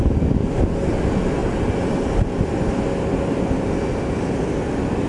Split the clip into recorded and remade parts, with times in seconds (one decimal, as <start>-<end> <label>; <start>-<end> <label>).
0.0-5.1 recorded

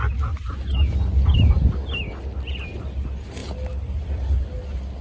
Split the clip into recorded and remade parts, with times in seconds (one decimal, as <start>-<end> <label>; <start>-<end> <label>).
0.0-5.0 recorded

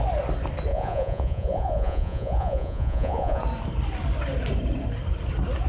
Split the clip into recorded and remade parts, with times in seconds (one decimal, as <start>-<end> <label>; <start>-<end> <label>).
0.0-0.7 recorded; 0.7-3.4 remade; 3.4-5.7 recorded

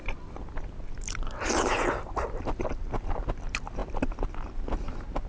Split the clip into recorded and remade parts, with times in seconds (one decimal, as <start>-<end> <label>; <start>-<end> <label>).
0.0-5.3 recorded

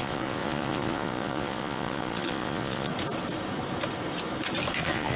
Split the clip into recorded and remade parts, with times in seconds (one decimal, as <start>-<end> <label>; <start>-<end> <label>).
0.0-2.9 remade; 2.9-4.8 recorded; 4.8-5.2 remade

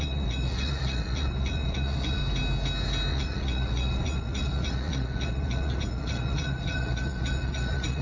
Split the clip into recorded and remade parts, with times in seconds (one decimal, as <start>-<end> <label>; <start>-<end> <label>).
0.0-2.2 remade; 2.2-3.1 recorded; 3.1-8.0 remade

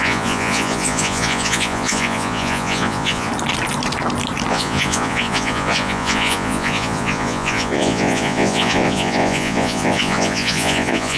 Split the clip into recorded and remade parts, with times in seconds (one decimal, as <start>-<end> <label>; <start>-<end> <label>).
0.0-3.3 remade; 3.3-4.5 recorded; 4.5-11.2 remade